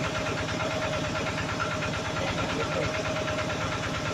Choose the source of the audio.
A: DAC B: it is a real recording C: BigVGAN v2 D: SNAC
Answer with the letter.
C